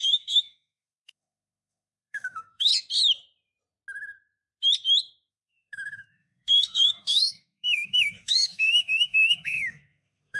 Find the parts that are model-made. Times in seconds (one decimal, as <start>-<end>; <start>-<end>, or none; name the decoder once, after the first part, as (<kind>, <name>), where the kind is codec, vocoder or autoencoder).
0.0-2.7 (autoencoder, DAC-VAE); 5.3-10.4